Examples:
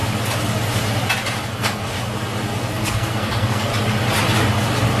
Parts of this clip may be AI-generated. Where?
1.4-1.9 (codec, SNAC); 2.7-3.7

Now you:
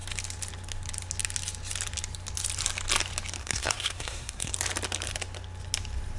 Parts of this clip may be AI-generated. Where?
3.4-4.5 (codec, SNAC)